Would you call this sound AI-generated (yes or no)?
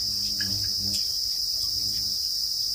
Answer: no